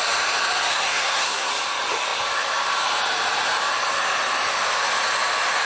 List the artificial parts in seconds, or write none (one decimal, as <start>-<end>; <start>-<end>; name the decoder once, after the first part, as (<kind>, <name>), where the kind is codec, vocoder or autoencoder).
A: 0.7-1.5 (codec, SNAC)